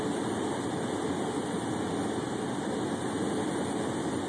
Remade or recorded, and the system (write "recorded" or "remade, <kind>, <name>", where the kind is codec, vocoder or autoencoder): recorded